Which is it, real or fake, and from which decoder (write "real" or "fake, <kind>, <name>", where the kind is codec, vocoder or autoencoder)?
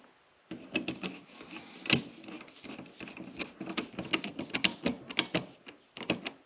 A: real